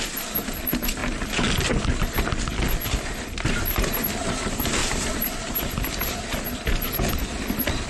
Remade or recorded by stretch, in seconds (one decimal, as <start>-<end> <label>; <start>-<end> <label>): 0.0-4.8 recorded; 4.8-5.4 remade; 5.4-7.9 recorded